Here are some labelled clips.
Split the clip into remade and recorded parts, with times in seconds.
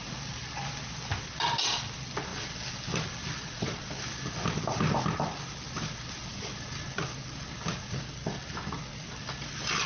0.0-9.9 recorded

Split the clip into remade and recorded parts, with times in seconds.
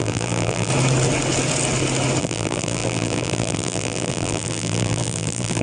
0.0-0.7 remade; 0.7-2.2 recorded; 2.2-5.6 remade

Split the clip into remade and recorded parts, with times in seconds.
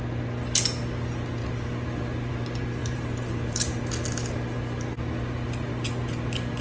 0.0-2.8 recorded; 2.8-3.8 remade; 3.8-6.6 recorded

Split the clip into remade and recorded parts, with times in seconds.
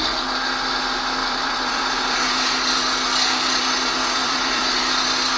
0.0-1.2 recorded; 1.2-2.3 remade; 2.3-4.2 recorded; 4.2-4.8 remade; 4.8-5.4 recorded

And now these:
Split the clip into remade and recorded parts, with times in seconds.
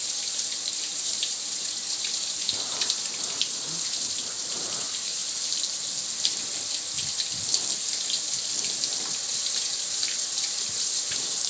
0.0-5.2 remade; 5.2-9.0 recorded; 9.0-11.5 remade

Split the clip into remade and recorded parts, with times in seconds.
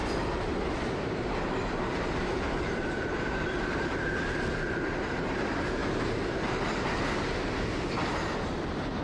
0.0-0.8 recorded; 0.8-5.8 remade; 5.8-8.5 recorded; 8.5-9.0 remade